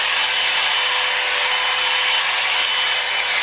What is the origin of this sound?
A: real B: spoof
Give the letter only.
A